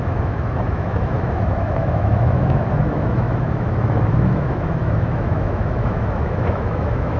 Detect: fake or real fake